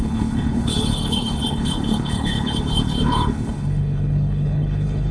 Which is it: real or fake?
fake